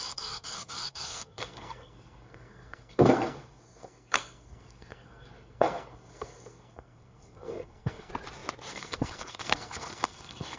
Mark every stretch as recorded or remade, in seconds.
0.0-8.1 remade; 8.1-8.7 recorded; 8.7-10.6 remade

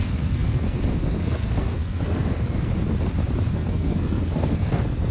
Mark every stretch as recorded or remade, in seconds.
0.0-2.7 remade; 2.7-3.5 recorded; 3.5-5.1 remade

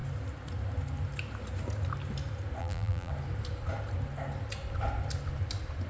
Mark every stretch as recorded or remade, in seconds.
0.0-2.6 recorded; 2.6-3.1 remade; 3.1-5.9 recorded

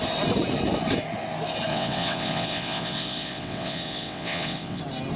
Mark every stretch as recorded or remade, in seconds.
0.0-1.7 recorded; 1.7-4.8 remade; 4.8-5.2 recorded

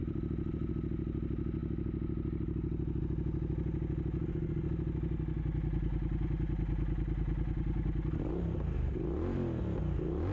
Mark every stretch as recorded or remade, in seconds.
0.0-0.7 remade; 0.7-10.3 recorded

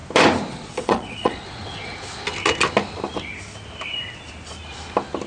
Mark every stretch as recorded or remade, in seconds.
0.0-0.5 recorded; 0.5-1.9 remade; 1.9-5.3 recorded